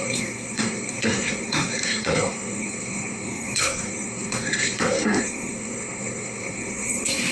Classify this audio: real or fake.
fake